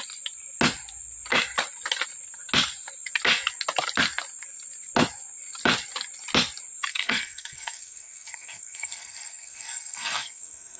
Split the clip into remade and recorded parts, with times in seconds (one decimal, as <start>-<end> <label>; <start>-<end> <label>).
0.0-6.9 recorded; 6.9-10.8 remade